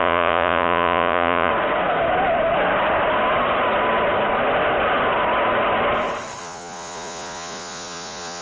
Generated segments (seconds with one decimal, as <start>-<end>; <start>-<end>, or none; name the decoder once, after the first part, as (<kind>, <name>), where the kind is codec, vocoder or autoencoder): 0.0-1.5 (vocoder, Vocos); 6.4-8.4